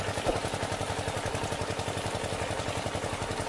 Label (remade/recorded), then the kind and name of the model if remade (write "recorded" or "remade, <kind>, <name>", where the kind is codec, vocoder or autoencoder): recorded